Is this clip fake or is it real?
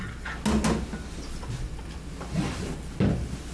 real